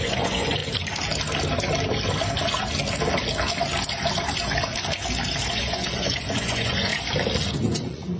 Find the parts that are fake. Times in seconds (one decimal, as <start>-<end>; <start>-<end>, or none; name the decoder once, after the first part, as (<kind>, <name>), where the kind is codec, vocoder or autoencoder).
0.0-0.6 (vocoder, Vocos); 5.5-6.9; 7.5-8.2